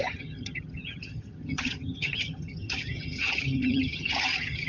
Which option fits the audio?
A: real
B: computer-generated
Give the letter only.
B